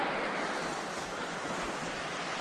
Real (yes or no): yes